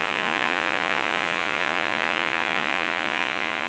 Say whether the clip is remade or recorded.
remade